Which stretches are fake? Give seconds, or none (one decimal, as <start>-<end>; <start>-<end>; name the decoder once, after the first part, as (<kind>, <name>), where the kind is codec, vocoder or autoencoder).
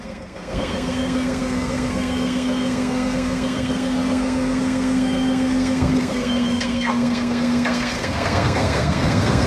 0.0-9.5 (codec, SNAC)